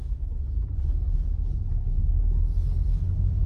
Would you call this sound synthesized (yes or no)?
no